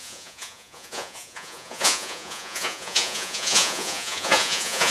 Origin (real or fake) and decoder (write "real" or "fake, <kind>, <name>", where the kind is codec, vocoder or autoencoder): fake, vocoder, Vocos